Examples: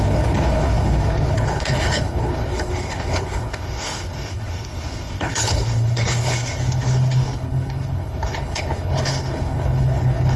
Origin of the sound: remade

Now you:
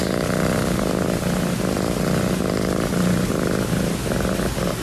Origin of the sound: recorded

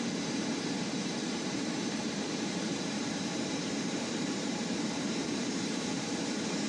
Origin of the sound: remade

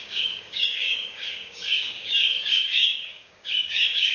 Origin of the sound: remade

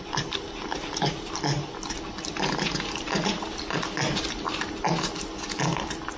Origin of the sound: recorded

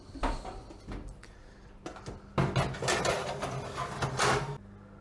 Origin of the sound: recorded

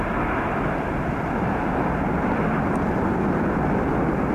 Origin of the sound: recorded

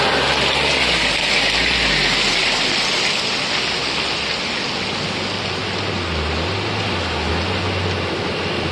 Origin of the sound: recorded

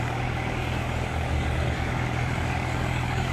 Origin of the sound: remade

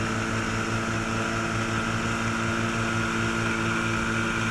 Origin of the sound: recorded